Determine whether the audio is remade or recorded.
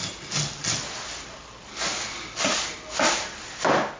recorded